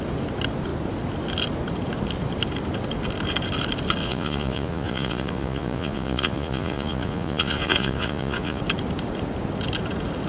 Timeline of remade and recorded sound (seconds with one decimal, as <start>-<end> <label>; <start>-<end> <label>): 0.0-4.0 recorded; 4.0-8.6 remade; 8.6-10.3 recorded